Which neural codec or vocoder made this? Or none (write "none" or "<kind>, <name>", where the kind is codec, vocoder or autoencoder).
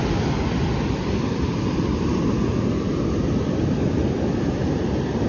none